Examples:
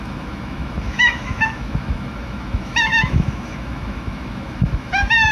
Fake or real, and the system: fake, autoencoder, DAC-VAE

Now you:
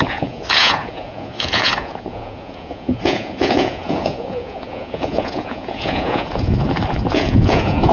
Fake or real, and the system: fake, vocoder, Vocos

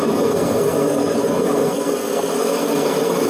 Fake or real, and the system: fake, codec, SNAC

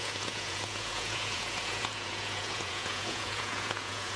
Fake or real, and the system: fake, vocoder, Vocos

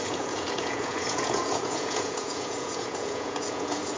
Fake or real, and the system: fake, vocoder, Vocos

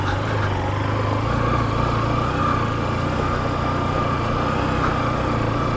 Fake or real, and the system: real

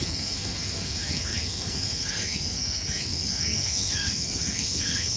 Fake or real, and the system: fake, codec, SNAC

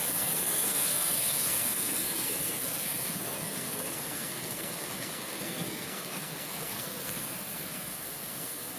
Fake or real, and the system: fake, codec, SNAC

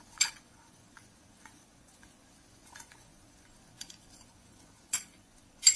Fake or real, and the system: fake, vocoder, Vocos